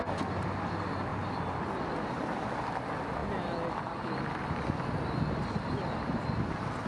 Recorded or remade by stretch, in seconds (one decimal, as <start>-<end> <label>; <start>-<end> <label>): 0.0-6.9 recorded